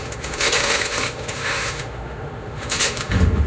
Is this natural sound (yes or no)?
no